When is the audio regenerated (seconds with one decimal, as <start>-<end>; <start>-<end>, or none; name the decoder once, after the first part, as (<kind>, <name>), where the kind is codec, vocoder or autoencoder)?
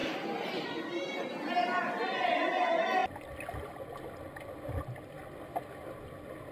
none